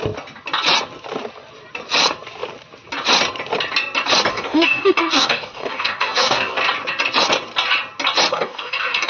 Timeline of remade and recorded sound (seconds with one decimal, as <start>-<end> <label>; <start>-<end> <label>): 0.0-4.3 recorded; 4.3-6.6 remade; 6.6-8.3 recorded; 8.3-9.1 remade